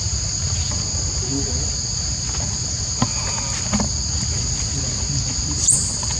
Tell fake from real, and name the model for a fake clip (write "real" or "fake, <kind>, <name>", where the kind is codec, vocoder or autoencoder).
real